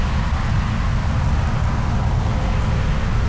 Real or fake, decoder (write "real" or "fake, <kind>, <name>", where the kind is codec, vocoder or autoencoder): real